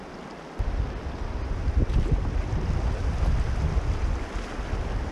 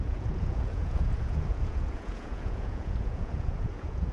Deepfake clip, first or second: second